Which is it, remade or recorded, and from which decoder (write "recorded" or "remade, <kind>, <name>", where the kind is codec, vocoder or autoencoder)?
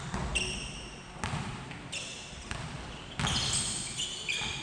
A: recorded